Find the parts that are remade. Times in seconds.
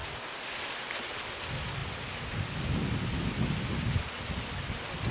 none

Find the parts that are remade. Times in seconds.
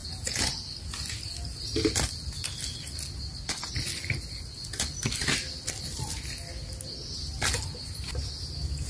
0.0-0.6 (vocoder, Vocos)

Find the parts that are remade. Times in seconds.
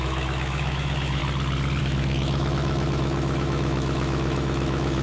0.0-1.2 (autoencoder, DAC-VAE); 1.8-5.0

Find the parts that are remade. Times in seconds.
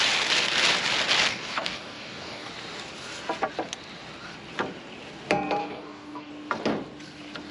1.3-2.5 (codec, DAC); 5.6-6.3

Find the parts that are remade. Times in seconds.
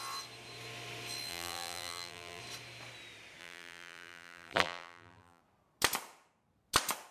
1.3-2.4 (vocoder, BigVGAN v2); 3.4-5.4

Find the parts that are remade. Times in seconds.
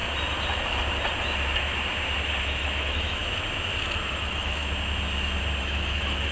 2.4-3.2 (autoencoder, DAC-VAE); 4.1-4.6; 5.6-6.3